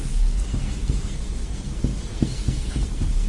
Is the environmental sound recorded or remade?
remade